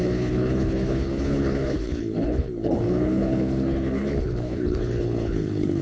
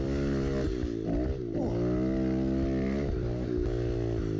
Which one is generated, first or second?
first